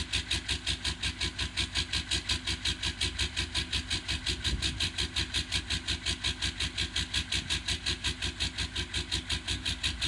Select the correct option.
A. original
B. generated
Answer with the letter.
A